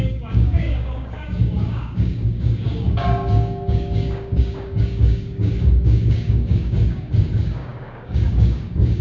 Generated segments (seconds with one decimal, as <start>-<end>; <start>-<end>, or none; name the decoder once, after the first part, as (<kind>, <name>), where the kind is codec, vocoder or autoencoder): 0.0-9.0 (codec, DAC)